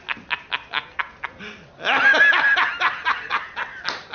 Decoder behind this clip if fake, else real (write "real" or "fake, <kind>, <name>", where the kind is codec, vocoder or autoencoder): real